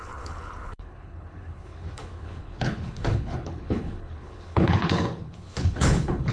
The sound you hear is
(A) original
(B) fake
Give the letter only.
B